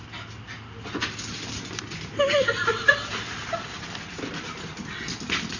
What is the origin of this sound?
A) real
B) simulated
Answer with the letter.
A